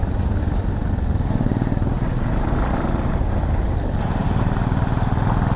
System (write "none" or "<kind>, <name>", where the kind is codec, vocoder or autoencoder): none